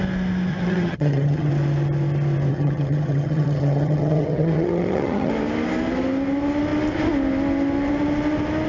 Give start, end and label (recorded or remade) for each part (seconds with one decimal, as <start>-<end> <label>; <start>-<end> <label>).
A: 0.0-0.5 recorded; 0.5-1.5 remade; 1.5-2.5 recorded; 2.5-5.3 remade; 5.3-8.7 recorded